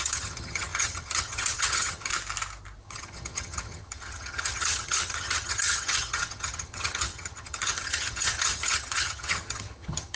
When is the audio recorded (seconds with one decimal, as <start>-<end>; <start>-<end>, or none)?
2.1-2.8